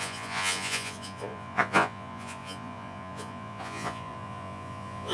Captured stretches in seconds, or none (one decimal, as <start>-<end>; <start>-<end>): none